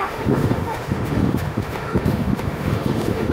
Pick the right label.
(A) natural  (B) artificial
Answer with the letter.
B